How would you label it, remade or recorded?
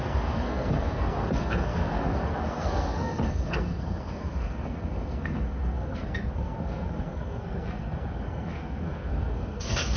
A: remade